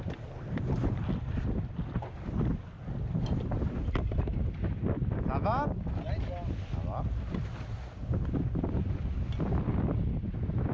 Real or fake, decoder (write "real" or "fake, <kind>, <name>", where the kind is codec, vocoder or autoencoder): real